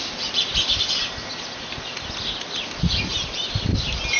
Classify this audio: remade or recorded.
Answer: recorded